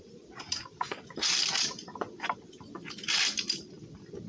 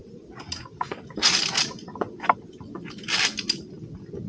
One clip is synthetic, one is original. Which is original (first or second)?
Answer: second